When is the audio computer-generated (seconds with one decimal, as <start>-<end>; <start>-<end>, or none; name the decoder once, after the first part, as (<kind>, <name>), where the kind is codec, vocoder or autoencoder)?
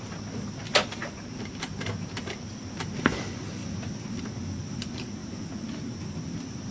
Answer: none